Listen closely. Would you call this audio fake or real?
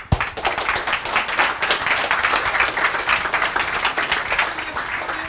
real